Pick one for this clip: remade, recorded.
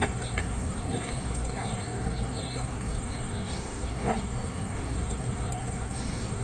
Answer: remade